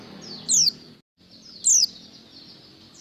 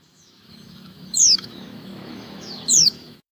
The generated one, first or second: second